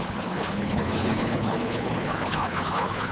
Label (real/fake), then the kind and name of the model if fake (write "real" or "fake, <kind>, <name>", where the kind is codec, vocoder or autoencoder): fake, codec, HILCodec